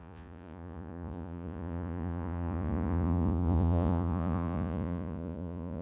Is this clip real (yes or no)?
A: no